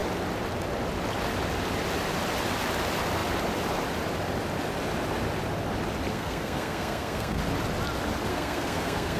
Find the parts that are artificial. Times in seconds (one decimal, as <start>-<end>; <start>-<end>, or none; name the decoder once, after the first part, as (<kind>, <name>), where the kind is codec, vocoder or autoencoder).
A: 6.1-7.4 (codec, SNAC); 8.3-9.2